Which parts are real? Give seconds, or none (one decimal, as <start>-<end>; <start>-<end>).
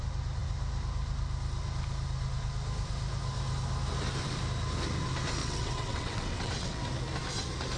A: 0.0-5.4; 6.8-7.8